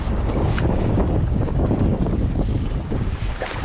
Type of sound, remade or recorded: remade